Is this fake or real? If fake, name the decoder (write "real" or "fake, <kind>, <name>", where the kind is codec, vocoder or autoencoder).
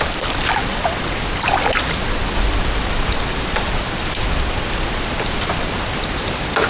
real